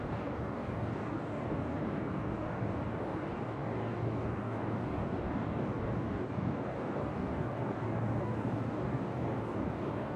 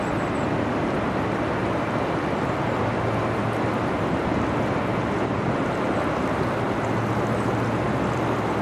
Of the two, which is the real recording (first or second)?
second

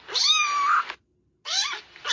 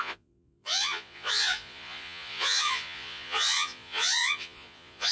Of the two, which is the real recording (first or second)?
first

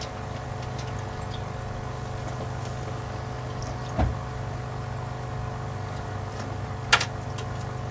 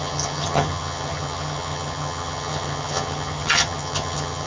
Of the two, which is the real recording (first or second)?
first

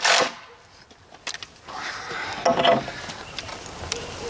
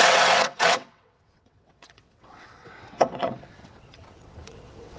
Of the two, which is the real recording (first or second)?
first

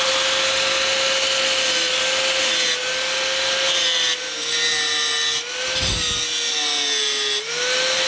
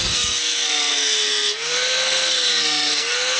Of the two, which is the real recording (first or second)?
first